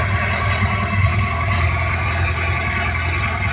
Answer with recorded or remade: recorded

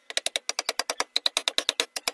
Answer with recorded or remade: recorded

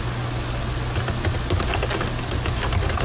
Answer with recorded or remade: recorded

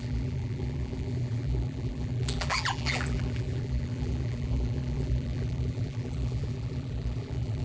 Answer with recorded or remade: remade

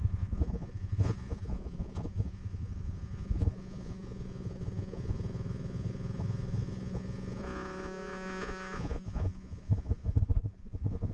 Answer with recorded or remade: remade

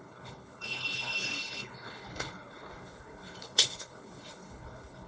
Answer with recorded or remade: remade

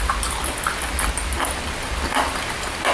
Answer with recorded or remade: recorded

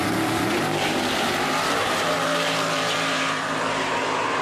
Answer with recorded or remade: remade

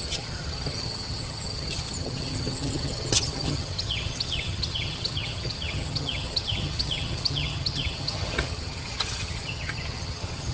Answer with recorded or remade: remade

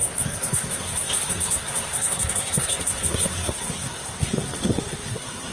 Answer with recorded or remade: remade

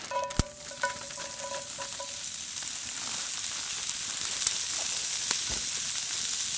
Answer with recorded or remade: recorded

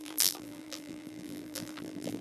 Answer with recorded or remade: remade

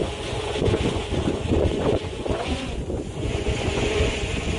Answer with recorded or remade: remade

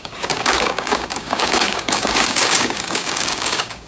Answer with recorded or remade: remade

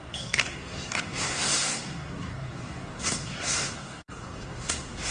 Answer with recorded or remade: remade